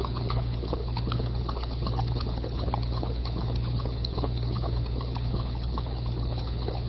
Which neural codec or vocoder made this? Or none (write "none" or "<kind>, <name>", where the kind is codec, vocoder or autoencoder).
codec, HILCodec